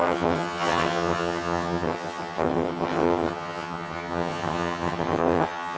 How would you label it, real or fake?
fake